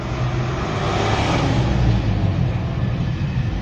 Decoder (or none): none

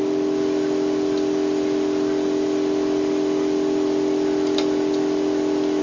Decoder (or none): none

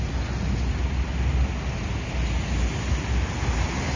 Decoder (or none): none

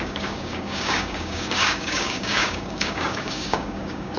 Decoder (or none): codec, DAC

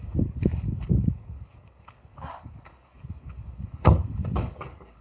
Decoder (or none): codec, DAC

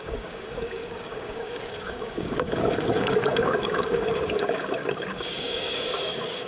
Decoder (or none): codec, DAC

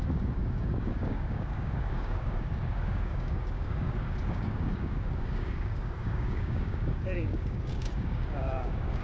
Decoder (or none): codec, DAC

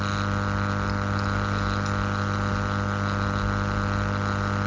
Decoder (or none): none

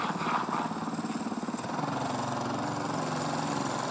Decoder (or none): none